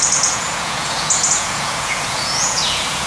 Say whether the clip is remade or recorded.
remade